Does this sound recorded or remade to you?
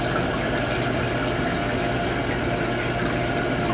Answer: recorded